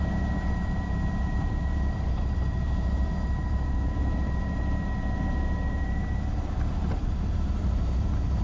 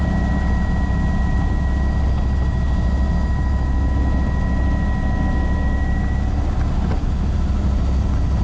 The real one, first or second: second